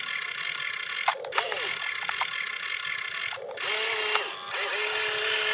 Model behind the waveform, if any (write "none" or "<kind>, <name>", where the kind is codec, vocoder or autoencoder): none